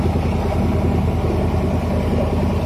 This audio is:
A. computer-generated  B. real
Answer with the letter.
B